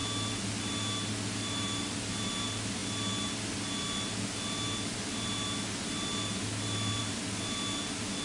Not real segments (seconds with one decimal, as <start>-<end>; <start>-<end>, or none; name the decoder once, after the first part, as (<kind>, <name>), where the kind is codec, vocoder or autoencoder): none